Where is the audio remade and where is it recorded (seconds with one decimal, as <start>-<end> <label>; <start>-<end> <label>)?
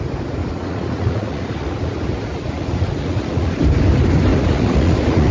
0.0-0.4 recorded; 0.4-3.6 remade; 3.6-4.3 recorded; 4.3-5.3 remade